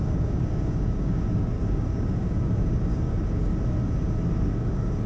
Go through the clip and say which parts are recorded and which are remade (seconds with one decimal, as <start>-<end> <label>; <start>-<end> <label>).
0.0-3.5 remade; 3.5-4.4 recorded; 4.4-5.1 remade